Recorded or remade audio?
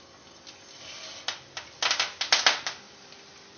recorded